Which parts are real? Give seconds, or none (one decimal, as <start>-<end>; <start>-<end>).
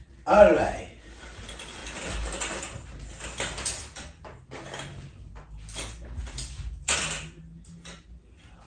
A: 0.0-8.7